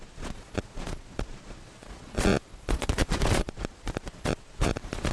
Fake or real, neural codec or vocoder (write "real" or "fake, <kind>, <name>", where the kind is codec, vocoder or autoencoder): fake, vocoder, Vocos